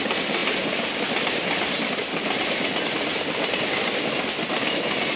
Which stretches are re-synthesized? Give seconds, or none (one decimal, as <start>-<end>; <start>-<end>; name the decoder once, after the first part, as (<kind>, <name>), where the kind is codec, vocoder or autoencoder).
none